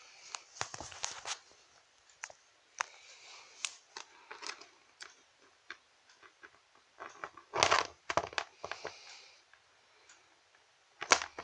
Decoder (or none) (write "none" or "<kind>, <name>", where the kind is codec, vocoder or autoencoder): none